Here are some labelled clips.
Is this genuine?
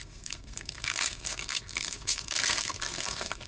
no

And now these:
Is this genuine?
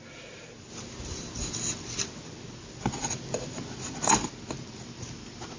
yes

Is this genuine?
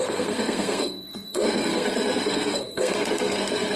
no